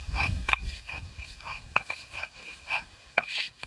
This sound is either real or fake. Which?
fake